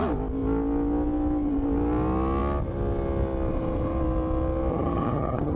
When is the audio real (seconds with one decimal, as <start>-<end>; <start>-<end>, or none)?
0.0-4.7